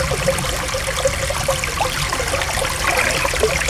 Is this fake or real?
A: real